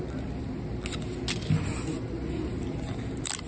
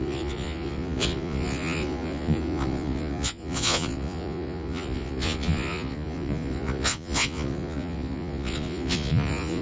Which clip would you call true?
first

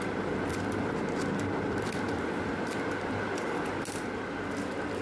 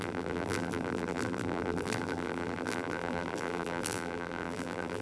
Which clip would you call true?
first